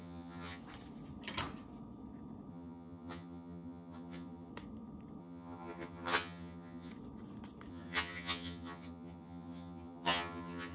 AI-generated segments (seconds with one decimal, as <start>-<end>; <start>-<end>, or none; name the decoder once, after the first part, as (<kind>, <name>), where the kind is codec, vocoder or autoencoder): 0.0-0.6 (vocoder, HiFi-GAN); 2.5-4.5; 5.2-6.9; 7.7-10.7